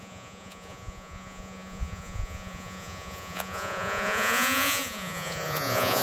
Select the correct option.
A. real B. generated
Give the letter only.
B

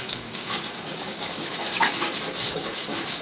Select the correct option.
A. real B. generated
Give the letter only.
B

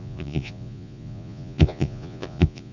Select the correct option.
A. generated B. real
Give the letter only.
A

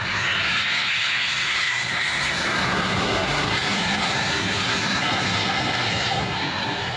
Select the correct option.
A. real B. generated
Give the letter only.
B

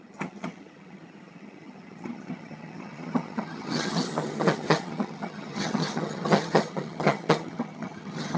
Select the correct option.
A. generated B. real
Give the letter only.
A